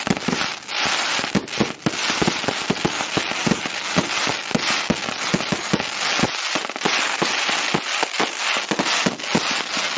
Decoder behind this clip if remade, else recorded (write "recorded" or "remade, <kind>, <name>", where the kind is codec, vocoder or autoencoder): recorded